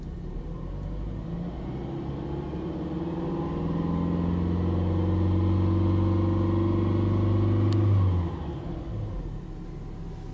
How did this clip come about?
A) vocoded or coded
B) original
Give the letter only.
B